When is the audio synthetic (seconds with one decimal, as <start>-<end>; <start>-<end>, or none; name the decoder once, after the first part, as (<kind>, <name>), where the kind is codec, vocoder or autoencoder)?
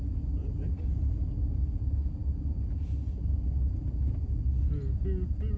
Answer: 0.4-1.0 (vocoder, BigVGAN v2)